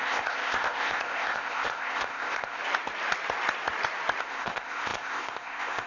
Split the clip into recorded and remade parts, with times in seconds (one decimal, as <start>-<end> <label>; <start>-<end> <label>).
0.0-2.6 remade; 2.6-4.2 recorded; 4.2-5.9 remade